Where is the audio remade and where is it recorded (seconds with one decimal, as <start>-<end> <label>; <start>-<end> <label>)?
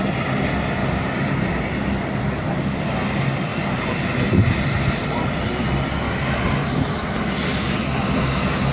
0.0-0.8 recorded; 0.8-2.2 remade; 2.2-3.5 recorded; 3.5-5.3 remade; 5.3-8.7 recorded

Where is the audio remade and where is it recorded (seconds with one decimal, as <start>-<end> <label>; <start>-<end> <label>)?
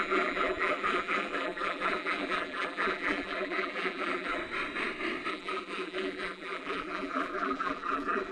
0.0-4.4 remade; 4.4-5.3 recorded; 5.3-8.3 remade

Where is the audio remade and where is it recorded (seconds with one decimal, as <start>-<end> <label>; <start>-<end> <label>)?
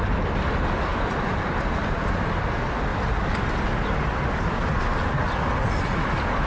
0.0-0.9 recorded; 0.9-1.8 remade; 1.8-6.5 recorded